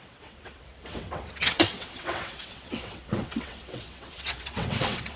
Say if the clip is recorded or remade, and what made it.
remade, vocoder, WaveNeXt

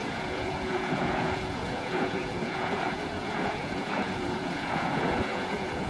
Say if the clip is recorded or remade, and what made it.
remade, vocoder, Vocos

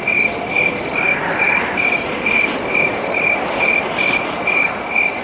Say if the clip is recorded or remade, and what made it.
recorded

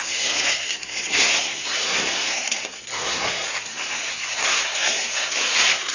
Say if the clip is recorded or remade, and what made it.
remade, codec, SNAC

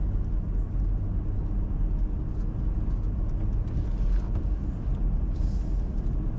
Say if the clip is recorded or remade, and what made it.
recorded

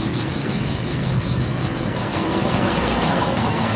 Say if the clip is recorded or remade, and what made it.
remade, codec, SNAC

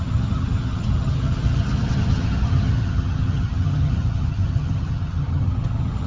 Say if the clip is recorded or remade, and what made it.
remade, vocoder, HiFi-GAN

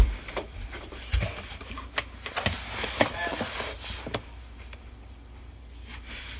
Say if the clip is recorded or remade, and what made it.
recorded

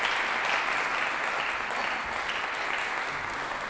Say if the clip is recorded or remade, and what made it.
recorded